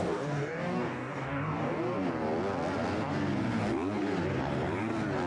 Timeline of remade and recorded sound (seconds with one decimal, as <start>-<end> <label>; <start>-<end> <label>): 0.0-1.8 remade; 1.8-5.3 recorded